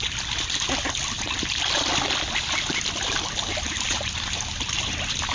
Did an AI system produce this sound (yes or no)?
no